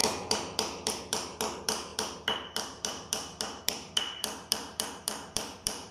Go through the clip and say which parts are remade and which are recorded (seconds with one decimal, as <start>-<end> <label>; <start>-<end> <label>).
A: 0.0-5.9 remade